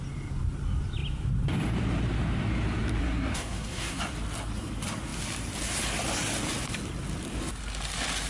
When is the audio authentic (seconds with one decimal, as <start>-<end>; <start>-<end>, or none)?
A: 0.0-3.0; 4.0-8.3